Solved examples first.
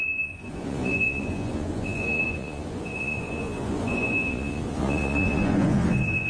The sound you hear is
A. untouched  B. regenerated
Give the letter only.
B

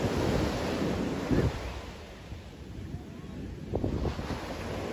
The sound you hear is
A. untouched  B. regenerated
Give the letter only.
A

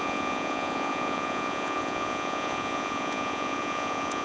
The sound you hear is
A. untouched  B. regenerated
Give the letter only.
B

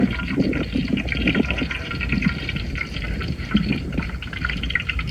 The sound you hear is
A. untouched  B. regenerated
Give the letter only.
B